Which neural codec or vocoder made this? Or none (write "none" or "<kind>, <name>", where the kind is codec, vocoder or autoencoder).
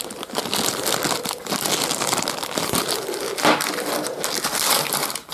none